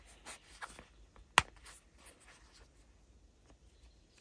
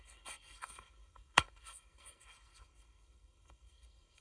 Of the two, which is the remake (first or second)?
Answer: second